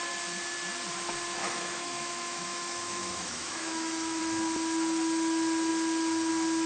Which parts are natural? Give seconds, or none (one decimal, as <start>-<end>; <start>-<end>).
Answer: 0.0-1.4; 4.2-6.7